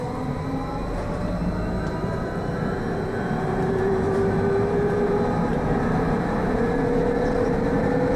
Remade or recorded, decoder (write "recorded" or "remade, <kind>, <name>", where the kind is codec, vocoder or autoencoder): remade, vocoder, BigVGAN v2